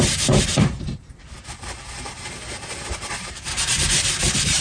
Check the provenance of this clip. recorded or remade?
remade